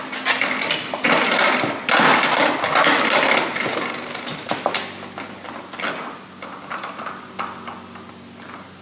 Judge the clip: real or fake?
real